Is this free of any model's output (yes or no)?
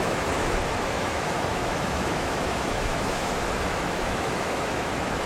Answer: no